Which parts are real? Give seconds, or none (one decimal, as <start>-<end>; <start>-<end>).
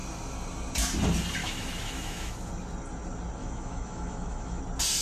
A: 0.0-1.4; 2.5-3.4; 4.6-5.0